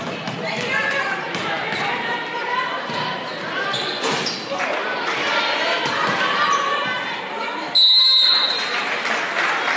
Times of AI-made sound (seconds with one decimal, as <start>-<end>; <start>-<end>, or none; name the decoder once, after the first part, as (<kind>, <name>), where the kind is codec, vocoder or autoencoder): none